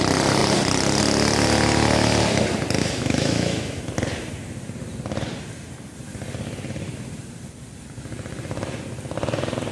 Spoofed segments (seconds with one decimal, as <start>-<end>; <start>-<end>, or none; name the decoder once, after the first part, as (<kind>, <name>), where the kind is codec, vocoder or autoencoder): 2.8-3.8 (autoencoder, DAC-VAE)